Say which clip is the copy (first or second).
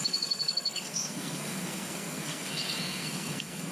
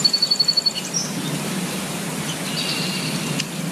first